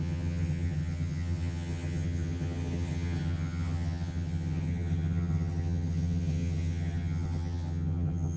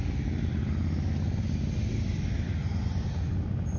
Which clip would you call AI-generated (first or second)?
first